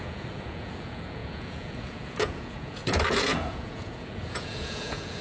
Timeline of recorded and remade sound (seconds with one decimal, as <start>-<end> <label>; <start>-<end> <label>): 0.0-5.2 remade